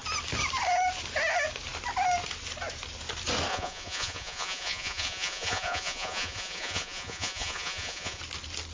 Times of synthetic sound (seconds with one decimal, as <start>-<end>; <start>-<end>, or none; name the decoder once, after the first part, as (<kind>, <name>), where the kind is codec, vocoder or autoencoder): 3.5-8.2 (vocoder, Vocos)